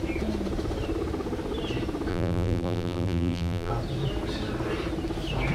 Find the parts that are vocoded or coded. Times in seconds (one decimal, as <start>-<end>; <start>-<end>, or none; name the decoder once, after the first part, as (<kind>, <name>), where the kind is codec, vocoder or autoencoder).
2.1-3.7 (vocoder, BigVGAN v2)